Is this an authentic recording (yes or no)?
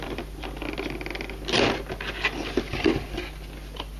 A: yes